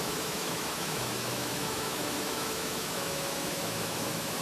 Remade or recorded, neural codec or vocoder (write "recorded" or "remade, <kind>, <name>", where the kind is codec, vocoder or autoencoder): remade, autoencoder, DAC-VAE